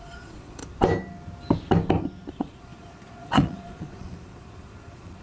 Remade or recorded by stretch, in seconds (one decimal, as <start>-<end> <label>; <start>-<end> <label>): 0.0-0.6 remade; 0.6-2.3 recorded; 2.3-5.2 remade